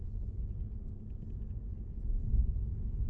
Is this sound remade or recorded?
recorded